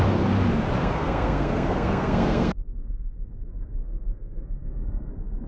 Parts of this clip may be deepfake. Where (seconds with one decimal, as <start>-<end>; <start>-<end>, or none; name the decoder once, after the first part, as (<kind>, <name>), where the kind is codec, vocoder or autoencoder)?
0.8-3.4 (codec, SNAC); 3.8-5.1